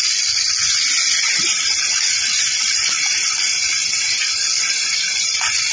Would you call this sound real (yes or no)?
yes